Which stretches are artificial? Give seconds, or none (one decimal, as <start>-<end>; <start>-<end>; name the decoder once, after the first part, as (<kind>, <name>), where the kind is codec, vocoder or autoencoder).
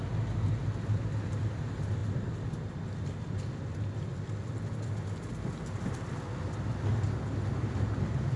none